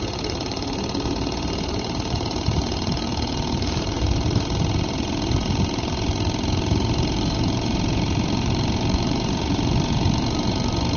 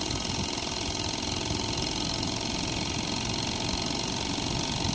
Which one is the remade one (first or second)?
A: first